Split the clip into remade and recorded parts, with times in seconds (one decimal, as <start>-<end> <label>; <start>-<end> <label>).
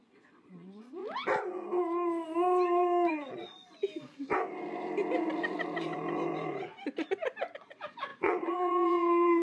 0.0-1.0 remade; 1.0-3.1 recorded; 3.1-3.8 remade; 3.8-7.6 recorded; 7.6-9.4 remade